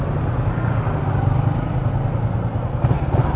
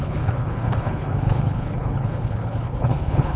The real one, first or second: first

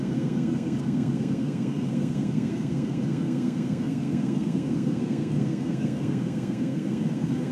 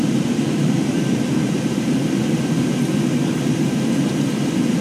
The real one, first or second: second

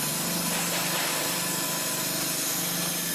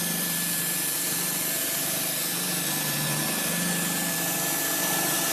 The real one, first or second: first